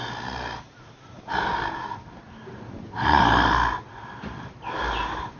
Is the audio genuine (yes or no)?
yes